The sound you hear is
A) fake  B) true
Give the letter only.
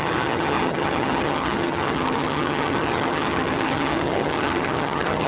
A